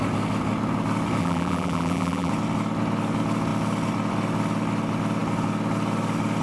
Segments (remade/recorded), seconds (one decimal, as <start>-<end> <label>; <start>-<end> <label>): 0.0-1.2 recorded; 1.2-2.3 remade; 2.3-6.4 recorded